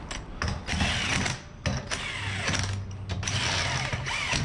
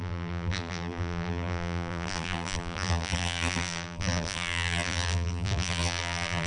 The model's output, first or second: second